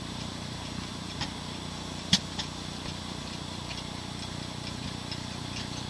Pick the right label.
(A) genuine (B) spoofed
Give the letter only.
A